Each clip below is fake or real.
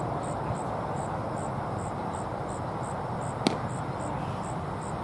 real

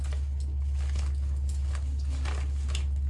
real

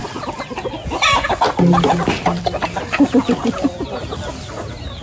real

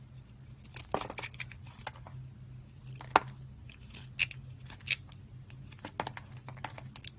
real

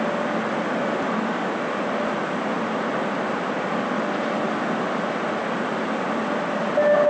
real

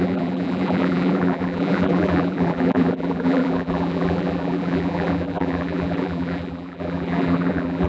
fake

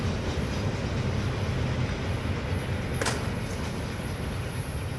real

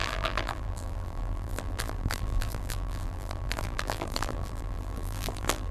fake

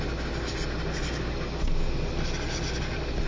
real